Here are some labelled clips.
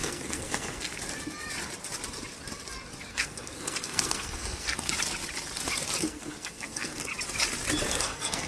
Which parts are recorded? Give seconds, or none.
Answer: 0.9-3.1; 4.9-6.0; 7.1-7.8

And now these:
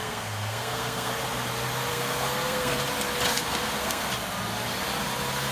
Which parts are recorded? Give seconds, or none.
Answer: 1.1-1.9; 2.8-3.3; 4.1-5.5